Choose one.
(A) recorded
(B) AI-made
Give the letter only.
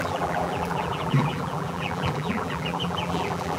B